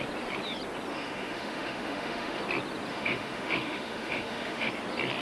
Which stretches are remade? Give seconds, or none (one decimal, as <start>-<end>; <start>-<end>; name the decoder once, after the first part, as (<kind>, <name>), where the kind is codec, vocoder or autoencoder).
0.9-2.4 (autoencoder, DAC-VAE); 2.9-4.7